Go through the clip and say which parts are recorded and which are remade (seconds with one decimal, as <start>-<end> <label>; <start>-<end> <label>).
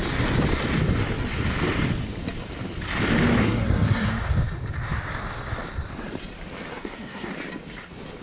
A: 0.0-3.4 recorded; 3.4-4.1 remade; 4.1-6.7 recorded; 6.7-7.3 remade; 7.3-8.2 recorded